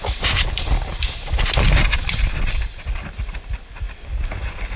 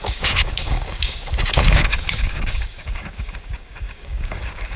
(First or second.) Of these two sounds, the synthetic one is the second